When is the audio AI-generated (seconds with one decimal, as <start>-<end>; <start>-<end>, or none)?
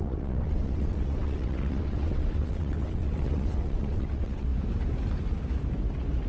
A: 0.0-4.5